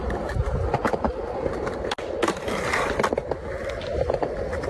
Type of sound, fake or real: real